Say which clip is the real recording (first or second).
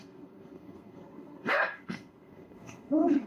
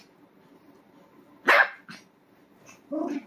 second